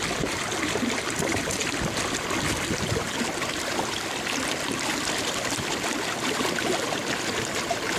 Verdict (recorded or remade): remade